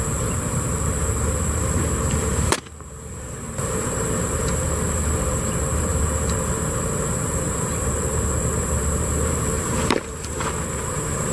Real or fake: fake